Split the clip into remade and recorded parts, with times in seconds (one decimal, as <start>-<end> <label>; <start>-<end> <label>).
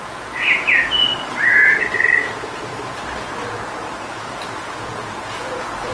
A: 0.0-1.1 remade; 1.1-2.2 recorded; 2.2-2.7 remade; 2.7-4.0 recorded; 4.0-5.9 remade